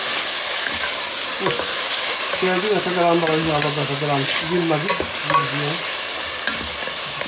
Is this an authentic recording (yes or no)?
yes